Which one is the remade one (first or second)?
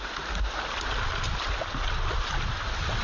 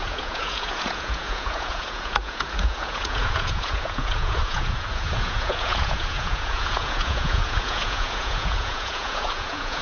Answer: second